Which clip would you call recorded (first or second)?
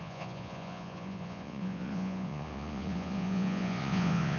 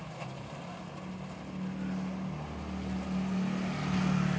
second